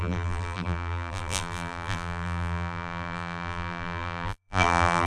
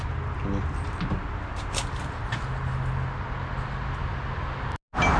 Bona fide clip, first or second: second